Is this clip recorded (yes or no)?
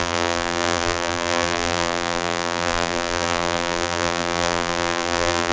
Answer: no